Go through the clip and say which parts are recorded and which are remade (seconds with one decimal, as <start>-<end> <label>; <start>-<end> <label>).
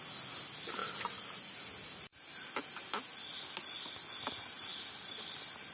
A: 0.0-5.7 recorded